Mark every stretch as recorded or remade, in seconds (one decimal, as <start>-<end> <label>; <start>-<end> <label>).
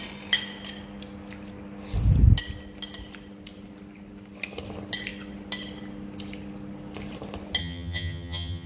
0.0-7.6 recorded; 7.6-8.7 remade